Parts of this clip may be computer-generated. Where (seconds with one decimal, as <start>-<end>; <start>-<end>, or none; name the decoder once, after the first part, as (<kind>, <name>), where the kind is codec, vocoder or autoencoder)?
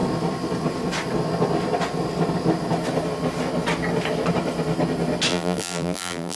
5.3-6.4 (vocoder, BigVGAN v2)